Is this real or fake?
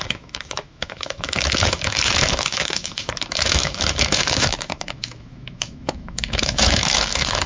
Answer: fake